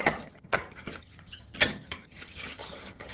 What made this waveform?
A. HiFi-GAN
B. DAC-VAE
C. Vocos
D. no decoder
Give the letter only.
A